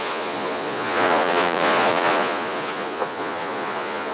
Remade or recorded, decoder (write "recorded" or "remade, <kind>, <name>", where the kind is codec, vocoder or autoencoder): remade, vocoder, Vocos